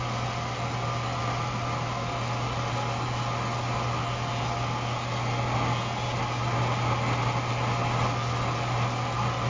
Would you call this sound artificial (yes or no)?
no